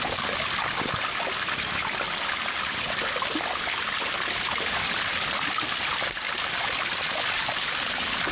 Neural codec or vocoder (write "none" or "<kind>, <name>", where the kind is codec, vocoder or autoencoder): none